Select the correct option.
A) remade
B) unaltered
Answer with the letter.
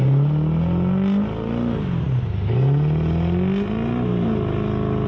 B